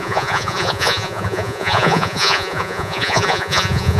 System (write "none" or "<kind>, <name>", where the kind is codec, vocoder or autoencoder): vocoder, Vocos